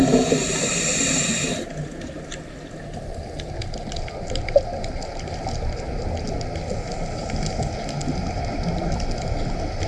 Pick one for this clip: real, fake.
real